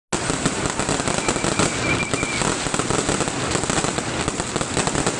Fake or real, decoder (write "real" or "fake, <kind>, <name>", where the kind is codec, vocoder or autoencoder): real